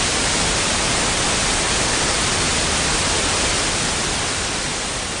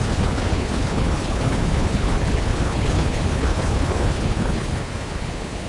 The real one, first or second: first